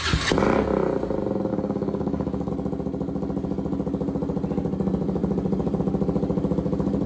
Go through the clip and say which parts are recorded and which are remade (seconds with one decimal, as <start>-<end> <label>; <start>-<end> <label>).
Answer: 0.0-1.5 recorded; 1.5-2.5 remade; 2.5-7.1 recorded